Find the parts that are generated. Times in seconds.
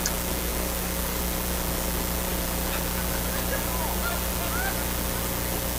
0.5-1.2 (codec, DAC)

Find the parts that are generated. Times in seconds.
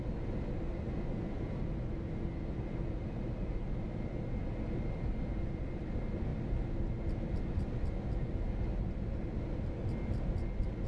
none